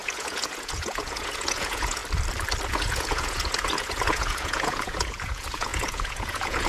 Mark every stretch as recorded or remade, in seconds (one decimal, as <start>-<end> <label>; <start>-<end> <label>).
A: 0.0-2.0 remade; 2.0-2.7 recorded; 2.7-6.7 remade